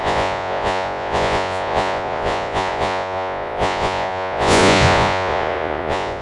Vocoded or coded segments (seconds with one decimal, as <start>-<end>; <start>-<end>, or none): 0.0-6.2